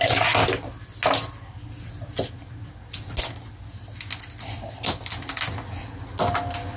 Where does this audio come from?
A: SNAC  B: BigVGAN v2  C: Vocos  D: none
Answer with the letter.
D